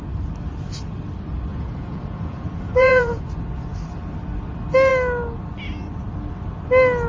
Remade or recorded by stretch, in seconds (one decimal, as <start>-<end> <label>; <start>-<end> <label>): 0.0-1.5 recorded; 1.5-3.2 remade; 3.2-7.1 recorded